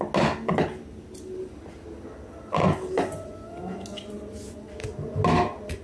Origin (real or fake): real